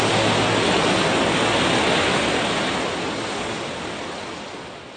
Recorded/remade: recorded